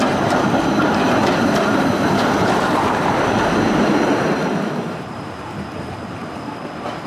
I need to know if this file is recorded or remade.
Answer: remade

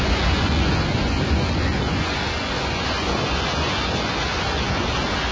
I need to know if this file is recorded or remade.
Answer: remade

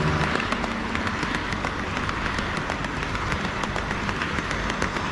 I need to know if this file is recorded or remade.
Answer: recorded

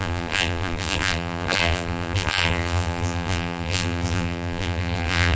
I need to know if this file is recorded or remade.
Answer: remade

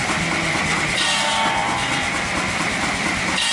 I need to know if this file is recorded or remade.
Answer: recorded